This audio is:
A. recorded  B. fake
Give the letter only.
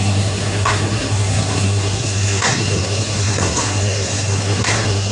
B